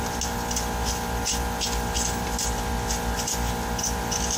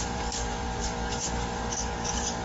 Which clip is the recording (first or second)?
first